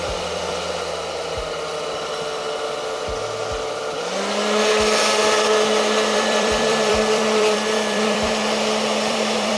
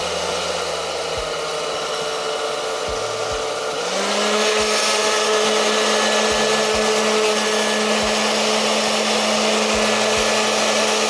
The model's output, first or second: first